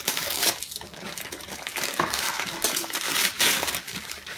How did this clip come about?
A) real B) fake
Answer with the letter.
B